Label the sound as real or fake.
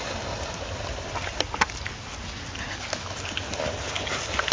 real